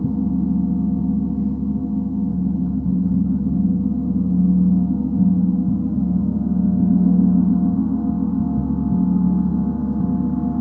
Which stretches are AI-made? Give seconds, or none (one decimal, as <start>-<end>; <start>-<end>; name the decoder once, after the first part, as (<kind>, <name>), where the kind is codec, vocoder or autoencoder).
2.3-3.8 (codec, HILCodec)